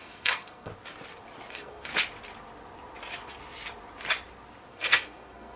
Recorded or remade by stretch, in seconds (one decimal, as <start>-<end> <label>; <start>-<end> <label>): 0.0-0.7 remade; 0.7-1.5 recorded; 1.5-1.9 remade; 1.9-4.7 recorded; 4.7-5.6 remade